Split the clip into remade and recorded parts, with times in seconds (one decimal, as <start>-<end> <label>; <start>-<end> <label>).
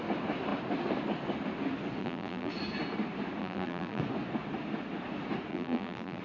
0.0-2.0 recorded; 2.0-2.5 remade; 2.5-3.4 recorded; 3.4-4.0 remade; 4.0-5.5 recorded; 5.5-6.2 remade